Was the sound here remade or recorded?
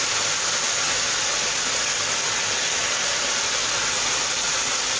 recorded